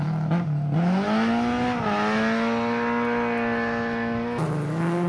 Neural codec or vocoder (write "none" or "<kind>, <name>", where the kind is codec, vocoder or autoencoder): none